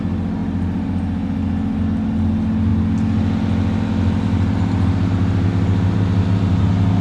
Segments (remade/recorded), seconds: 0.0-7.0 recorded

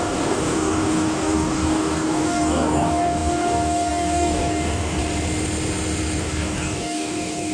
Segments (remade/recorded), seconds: 0.0-5.0 remade; 5.0-6.2 recorded; 6.2-7.5 remade

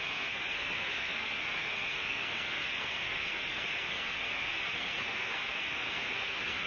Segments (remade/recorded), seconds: 0.0-6.7 remade

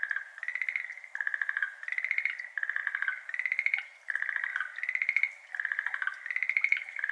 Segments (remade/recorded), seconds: 0.0-7.1 recorded

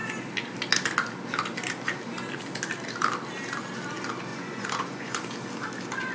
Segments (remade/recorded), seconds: 0.0-4.3 recorded; 4.3-5.2 remade; 5.2-6.1 recorded

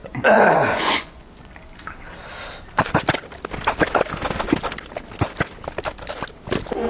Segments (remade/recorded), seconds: 0.0-1.5 remade; 1.5-6.9 recorded

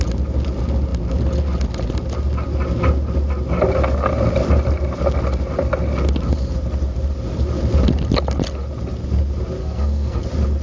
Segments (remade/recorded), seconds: 0.0-9.6 recorded; 9.6-10.2 remade; 10.2-10.6 recorded

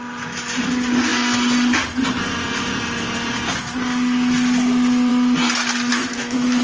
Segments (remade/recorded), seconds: 0.0-5.9 recorded; 5.9-6.6 remade